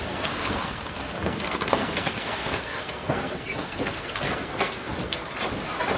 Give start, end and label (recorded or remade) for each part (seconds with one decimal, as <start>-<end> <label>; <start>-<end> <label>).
0.0-5.2 remade; 5.2-6.0 recorded